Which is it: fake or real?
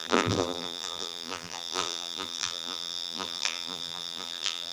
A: fake